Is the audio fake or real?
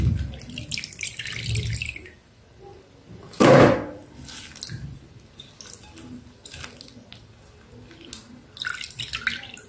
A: real